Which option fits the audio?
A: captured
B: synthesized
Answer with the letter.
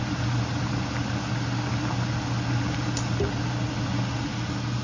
A